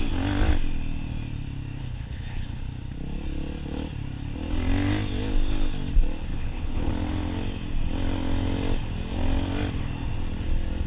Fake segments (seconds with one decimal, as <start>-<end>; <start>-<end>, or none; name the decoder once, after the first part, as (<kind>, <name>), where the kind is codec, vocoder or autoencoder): 1.8-2.6 (codec, HILCodec); 6.3-6.9